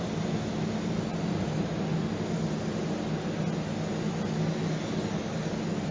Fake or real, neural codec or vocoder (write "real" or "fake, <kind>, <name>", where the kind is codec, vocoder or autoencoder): real